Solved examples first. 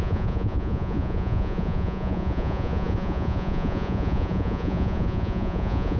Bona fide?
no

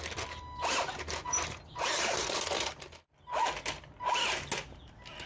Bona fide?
yes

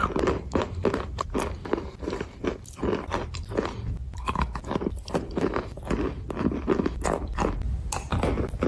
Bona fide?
yes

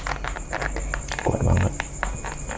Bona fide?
yes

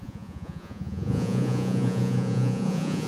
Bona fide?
no